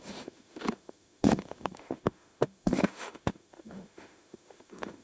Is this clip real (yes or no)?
no